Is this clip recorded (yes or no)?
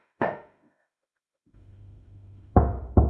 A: no